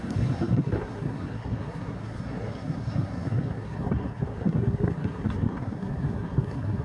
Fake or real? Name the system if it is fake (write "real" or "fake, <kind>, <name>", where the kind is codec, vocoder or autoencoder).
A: fake, codec, SNAC